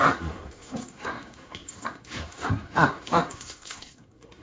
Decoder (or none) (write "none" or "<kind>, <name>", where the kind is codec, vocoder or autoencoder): codec, SNAC